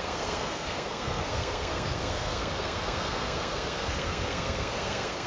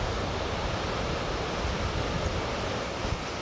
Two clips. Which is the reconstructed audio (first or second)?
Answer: first